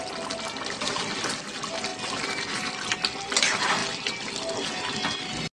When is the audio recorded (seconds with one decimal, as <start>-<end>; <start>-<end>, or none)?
0.0-5.6